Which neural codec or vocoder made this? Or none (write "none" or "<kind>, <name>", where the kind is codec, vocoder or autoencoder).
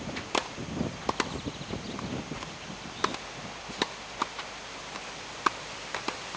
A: none